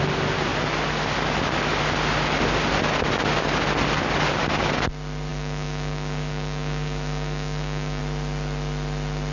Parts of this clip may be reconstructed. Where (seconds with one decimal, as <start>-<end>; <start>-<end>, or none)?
5.3-8.0

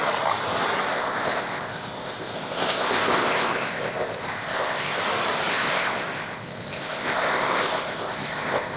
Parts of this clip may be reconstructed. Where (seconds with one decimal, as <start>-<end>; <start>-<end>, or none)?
0.9-5.0; 5.5-8.8

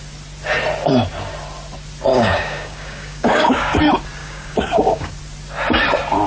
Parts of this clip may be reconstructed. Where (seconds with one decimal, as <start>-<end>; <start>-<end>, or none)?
2.1-3.8; 4.2-5.1

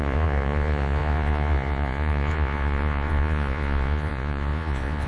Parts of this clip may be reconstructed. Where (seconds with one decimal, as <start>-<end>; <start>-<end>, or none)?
0.0-5.1

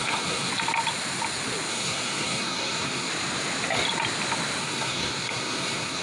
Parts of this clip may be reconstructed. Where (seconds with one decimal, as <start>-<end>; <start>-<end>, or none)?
0.0-0.5; 1.7-3.1; 4.6-6.0

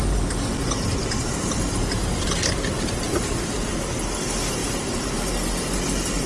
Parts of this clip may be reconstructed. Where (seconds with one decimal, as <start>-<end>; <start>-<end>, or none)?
0.6-3.7; 4.6-5.3

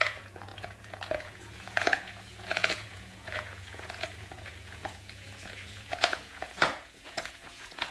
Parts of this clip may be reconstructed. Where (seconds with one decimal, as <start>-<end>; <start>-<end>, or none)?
0.0-7.9